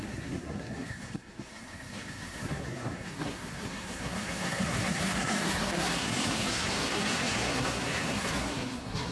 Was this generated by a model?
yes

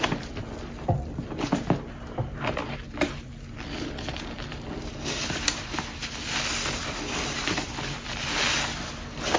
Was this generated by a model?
yes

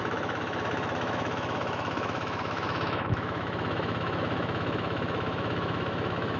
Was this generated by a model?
yes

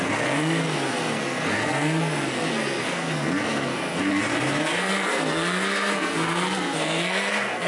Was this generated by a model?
yes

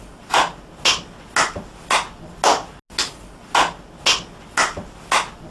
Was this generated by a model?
no